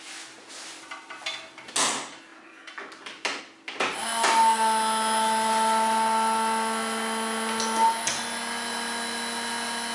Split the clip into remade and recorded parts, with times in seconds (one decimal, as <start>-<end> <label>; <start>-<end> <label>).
0.0-9.9 recorded

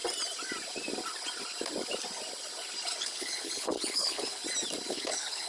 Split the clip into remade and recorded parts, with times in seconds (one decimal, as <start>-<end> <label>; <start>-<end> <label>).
0.0-3.0 recorded; 3.0-4.4 remade; 4.4-4.9 recorded; 4.9-5.5 remade

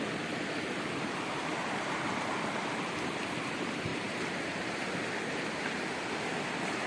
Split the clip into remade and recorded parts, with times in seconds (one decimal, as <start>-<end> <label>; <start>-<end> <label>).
0.0-3.9 recorded; 3.9-5.0 remade; 5.0-6.9 recorded

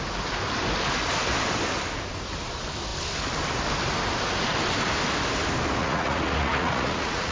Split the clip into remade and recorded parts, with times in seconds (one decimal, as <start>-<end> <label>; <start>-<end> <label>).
0.0-5.8 recorded; 5.8-7.3 remade

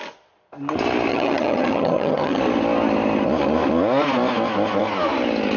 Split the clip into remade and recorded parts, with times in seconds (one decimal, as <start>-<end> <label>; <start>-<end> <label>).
0.0-1.1 recorded; 1.1-2.4 remade; 2.4-5.6 recorded

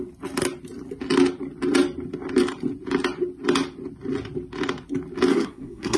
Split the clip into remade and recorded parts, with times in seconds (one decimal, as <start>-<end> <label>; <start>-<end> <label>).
0.0-5.3 recorded; 5.3-6.0 remade

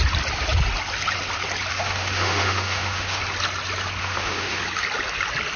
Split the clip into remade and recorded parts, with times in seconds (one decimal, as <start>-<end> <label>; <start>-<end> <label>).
0.0-1.7 recorded; 1.7-3.2 remade; 3.2-4.0 recorded; 4.0-4.6 remade; 4.6-5.6 recorded